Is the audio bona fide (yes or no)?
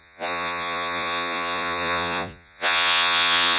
no